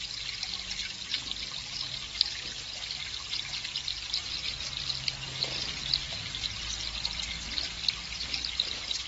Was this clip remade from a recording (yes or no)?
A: no